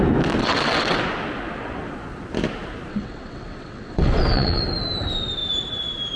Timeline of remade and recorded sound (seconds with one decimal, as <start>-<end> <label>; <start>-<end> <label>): 0.0-0.4 recorded; 0.4-1.0 remade; 1.0-2.9 recorded; 2.9-4.6 remade; 4.6-6.2 recorded

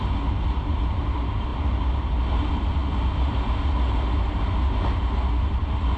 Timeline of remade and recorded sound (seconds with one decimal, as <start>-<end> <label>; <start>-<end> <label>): 0.0-6.0 recorded

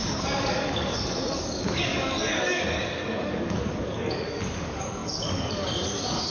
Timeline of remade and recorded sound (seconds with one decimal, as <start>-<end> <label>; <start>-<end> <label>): 0.0-6.3 remade

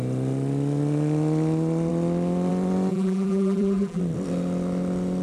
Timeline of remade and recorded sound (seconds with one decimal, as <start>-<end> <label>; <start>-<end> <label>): 0.0-2.9 recorded; 2.9-4.0 remade; 4.0-5.2 recorded

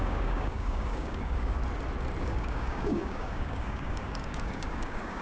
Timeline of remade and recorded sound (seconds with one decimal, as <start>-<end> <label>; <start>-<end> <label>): 0.0-1.6 remade; 1.6-2.2 recorded; 2.2-5.2 remade

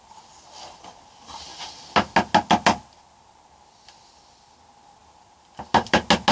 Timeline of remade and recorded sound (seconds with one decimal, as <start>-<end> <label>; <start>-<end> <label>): 0.0-6.3 recorded

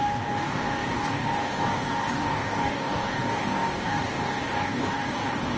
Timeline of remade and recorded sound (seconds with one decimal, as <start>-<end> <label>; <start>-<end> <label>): 0.0-5.6 remade

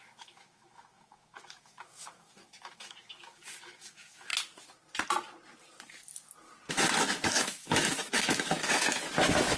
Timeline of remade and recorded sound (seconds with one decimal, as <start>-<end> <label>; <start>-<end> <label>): 0.0-4.3 remade; 4.3-6.7 recorded; 6.7-9.6 remade